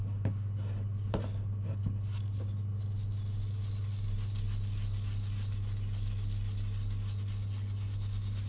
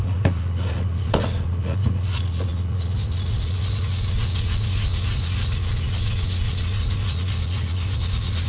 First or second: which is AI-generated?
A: second